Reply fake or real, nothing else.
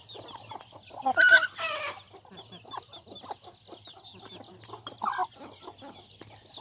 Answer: real